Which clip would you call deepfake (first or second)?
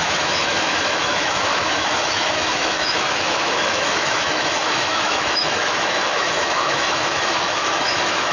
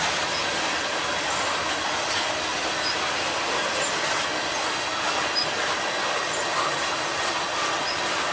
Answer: first